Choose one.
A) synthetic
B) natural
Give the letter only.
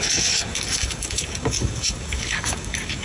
A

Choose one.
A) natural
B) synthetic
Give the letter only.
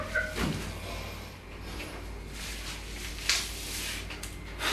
A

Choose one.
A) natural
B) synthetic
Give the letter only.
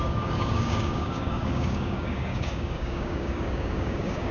B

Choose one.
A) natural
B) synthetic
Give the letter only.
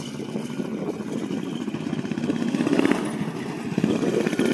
A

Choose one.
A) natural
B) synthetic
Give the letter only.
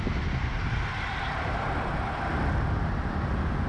A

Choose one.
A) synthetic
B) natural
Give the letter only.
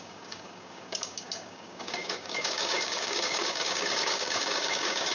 A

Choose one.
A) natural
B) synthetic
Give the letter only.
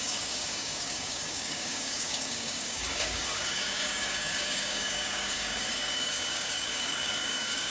B